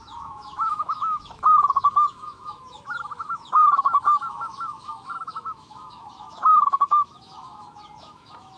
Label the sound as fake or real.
fake